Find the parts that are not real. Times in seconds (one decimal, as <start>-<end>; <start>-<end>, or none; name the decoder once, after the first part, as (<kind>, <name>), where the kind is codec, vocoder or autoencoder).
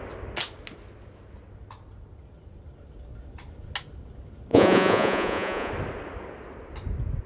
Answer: 4.5-5.7 (vocoder, Vocos)